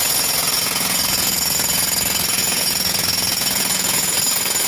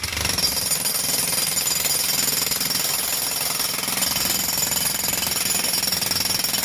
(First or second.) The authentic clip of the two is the second